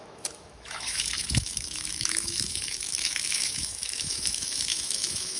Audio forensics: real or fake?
fake